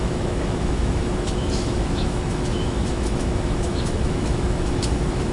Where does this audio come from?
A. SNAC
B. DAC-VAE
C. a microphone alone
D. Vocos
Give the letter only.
B